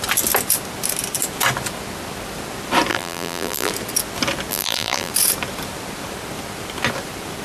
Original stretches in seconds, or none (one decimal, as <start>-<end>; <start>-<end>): 0.0-2.9; 3.7-4.5; 5.1-7.4